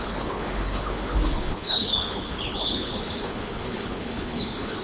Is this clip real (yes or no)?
no